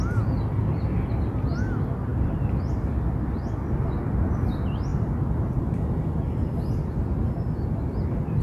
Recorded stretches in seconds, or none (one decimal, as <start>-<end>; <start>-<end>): 0.0-8.4